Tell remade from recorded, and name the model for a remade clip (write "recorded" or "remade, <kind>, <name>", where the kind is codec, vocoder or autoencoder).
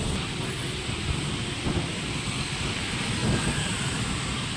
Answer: remade, vocoder, BigVGAN v2